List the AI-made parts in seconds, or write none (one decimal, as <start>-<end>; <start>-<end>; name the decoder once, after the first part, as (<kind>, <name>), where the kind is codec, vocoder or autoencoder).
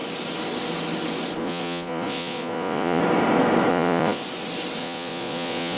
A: 1.4-3.0 (vocoder, Vocos); 3.7-4.2; 4.8-5.8